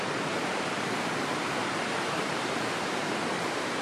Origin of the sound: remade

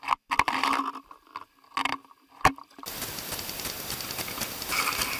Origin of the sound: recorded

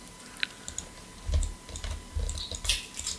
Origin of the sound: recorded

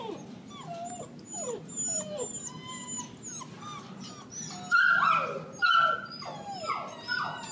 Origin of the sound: recorded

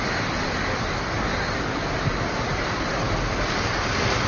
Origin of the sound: remade